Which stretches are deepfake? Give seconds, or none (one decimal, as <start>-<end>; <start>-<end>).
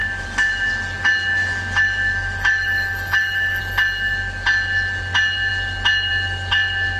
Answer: 0.0-0.7; 1.3-3.6